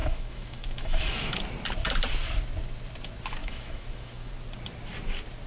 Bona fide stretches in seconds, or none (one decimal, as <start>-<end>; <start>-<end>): 1.4-3.4; 4.3-5.5